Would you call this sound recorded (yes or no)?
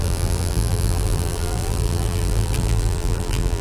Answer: no